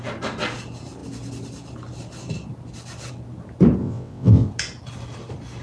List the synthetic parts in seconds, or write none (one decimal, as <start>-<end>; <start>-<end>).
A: 3.8-4.5